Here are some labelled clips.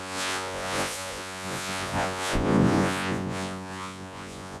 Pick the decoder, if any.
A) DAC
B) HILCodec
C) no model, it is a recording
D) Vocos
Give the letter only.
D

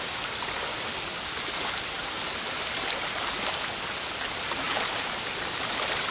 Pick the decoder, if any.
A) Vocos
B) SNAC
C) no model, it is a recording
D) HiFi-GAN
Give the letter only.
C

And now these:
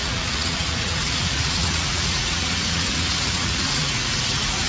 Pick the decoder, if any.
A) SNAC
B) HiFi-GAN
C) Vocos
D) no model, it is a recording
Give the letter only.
C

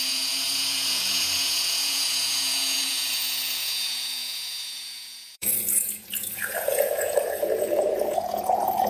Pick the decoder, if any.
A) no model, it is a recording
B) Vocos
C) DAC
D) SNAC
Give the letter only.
B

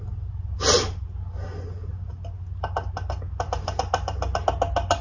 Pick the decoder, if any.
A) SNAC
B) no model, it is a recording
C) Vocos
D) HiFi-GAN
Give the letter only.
B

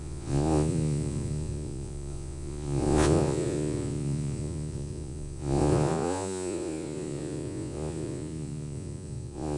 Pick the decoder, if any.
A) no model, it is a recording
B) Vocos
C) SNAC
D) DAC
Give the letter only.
B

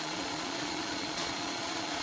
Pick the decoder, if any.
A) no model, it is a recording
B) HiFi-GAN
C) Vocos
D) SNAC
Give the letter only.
C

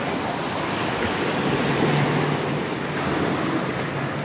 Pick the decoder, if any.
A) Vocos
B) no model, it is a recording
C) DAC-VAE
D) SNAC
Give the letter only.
B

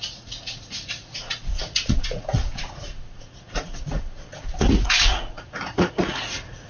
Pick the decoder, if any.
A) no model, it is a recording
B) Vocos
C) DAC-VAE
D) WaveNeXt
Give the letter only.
B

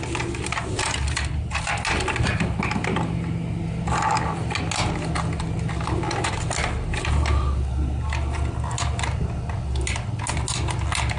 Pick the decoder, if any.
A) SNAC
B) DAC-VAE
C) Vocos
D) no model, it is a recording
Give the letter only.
D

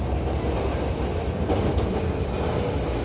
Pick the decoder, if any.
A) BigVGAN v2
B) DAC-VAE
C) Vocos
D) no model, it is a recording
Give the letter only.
D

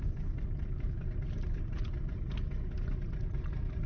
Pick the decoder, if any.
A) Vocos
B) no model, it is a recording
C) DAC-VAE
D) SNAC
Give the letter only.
B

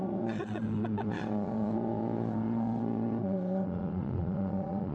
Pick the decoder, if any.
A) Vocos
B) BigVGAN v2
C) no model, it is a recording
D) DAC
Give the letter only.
A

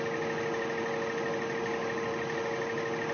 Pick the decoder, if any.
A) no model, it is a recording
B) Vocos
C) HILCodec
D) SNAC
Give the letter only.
A